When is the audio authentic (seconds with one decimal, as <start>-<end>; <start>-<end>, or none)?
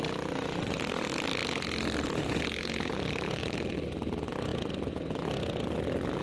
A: 0.0-6.2